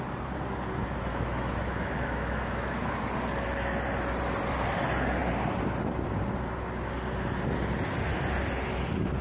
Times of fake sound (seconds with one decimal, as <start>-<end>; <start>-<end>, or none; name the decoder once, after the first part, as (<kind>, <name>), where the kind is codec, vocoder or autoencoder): 1.1-2.9 (autoencoder, DAC-VAE)